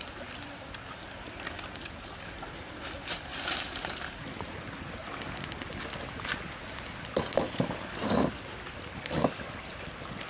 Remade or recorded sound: recorded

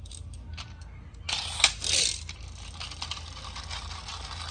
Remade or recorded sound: recorded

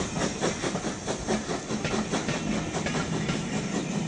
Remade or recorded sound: recorded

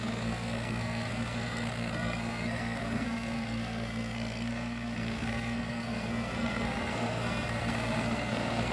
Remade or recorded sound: remade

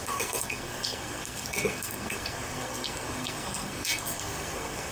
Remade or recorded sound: remade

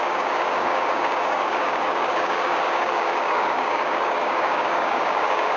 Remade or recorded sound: remade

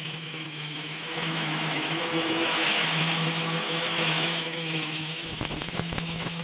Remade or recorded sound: remade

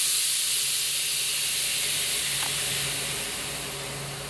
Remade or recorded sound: recorded